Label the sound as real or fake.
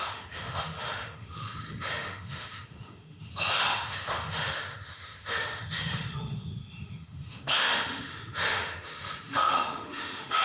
fake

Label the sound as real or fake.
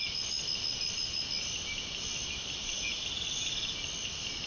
real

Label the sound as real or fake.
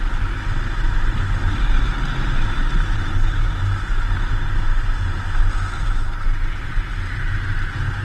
real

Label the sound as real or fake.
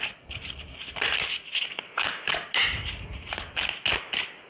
real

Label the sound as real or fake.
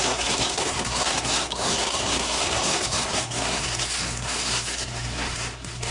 fake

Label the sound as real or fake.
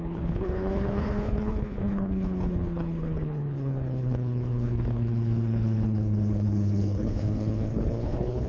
fake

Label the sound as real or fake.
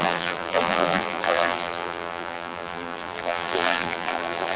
fake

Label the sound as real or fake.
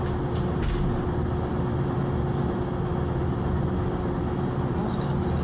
real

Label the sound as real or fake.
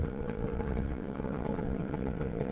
fake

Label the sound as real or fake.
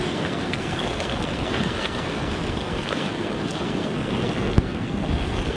fake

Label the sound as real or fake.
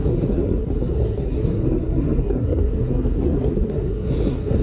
fake